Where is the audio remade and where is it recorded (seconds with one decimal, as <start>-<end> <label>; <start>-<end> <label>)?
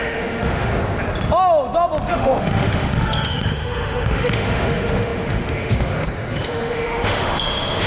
0.0-0.7 remade; 0.7-2.1 recorded; 2.1-7.9 remade